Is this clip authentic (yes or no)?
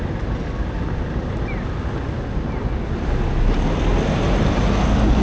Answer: yes